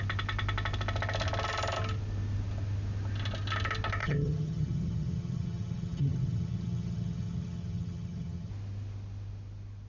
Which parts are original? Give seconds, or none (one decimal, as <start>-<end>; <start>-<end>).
0.0-4.0; 8.5-9.9